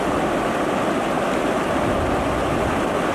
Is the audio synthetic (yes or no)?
no